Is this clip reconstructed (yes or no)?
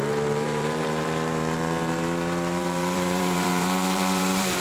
yes